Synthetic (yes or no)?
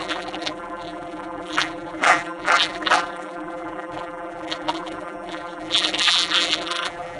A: yes